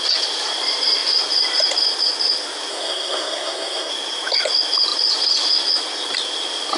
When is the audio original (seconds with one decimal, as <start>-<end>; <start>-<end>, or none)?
0.0-2.7; 3.9-6.8